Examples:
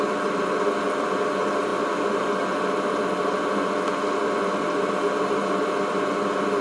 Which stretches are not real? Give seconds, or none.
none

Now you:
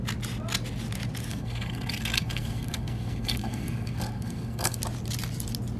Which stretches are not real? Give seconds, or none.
1.3-4.8 (codec, SNAC)

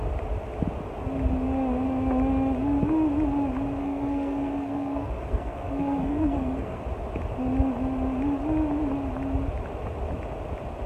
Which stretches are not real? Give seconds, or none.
3.8-6.8 (codec, SNAC)

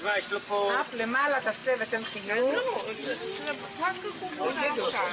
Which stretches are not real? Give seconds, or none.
none

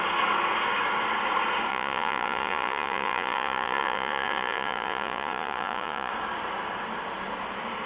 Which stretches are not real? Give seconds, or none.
1.7-6.1 (vocoder, Vocos)

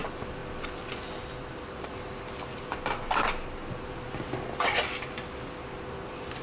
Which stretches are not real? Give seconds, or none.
none

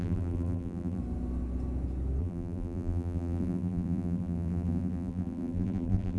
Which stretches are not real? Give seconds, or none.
0.0-1.0 (vocoder, BigVGAN v2); 2.2-6.2

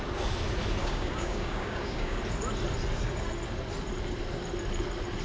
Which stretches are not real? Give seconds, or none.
0.8-2.2 (codec, DAC)